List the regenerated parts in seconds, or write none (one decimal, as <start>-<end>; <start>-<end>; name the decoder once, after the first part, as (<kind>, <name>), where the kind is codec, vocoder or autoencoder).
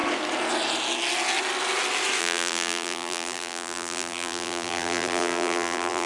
2.2-6.1 (vocoder, BigVGAN v2)